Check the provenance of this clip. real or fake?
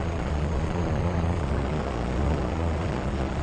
fake